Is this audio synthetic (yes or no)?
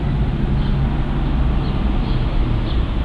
no